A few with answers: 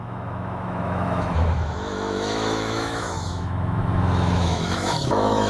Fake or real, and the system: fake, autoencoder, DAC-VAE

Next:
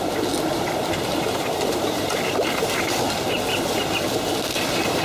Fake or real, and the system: fake, vocoder, BigVGAN v2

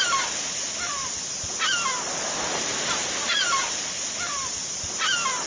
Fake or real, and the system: real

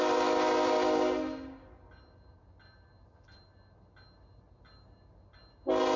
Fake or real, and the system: real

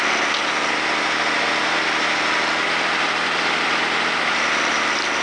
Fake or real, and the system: real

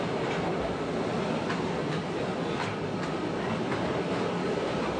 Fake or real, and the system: real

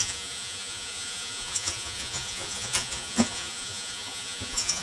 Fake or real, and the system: fake, vocoder, Vocos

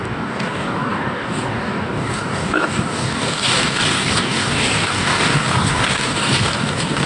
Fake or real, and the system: fake, codec, DAC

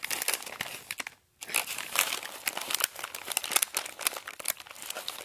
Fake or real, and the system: real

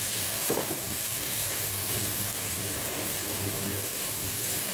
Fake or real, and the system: fake, codec, DAC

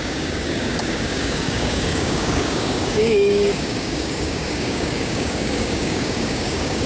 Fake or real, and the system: fake, codec, DAC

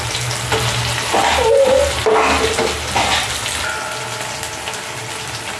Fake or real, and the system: real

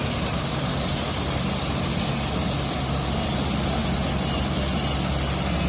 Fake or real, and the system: real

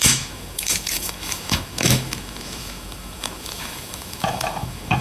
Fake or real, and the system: fake, autoencoder, DAC-VAE